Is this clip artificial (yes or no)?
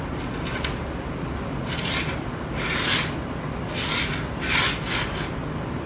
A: no